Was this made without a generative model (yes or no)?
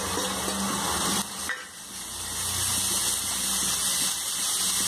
yes